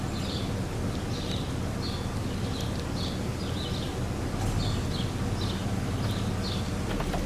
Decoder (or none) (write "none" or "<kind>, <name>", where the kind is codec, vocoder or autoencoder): none